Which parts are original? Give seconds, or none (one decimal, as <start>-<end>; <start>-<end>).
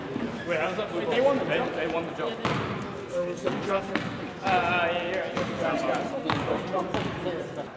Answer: 0.0-3.0; 4.2-6.1; 6.8-7.8